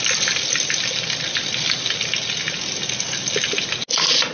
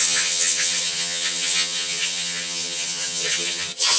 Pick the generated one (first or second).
second